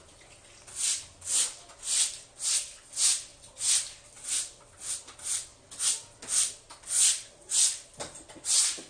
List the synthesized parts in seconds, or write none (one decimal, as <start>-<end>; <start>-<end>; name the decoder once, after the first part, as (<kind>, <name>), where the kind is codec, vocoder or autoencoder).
none